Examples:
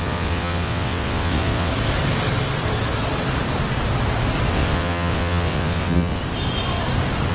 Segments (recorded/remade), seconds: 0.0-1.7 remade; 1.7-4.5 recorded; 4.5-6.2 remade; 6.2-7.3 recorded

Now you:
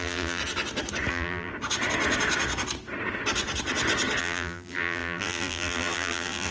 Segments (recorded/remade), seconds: 0.0-0.4 remade; 0.4-1.1 recorded; 1.1-1.5 remade; 1.5-4.2 recorded; 4.2-6.5 remade

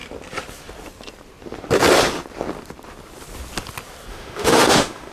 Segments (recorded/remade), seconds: 0.0-4.1 recorded; 4.1-5.1 remade